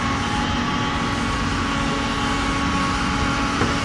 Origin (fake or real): real